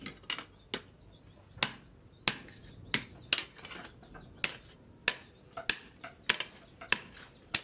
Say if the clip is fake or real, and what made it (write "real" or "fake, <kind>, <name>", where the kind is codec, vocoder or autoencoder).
real